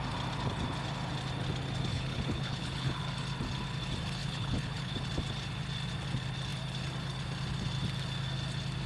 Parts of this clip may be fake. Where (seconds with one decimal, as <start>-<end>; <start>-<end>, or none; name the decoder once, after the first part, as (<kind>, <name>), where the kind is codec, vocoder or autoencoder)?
1.9-3.0 (codec, HILCodec); 4.2-4.9